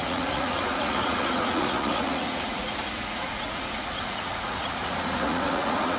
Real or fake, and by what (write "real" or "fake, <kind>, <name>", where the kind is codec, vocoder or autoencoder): fake, vocoder, Vocos